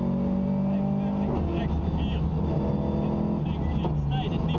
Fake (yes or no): no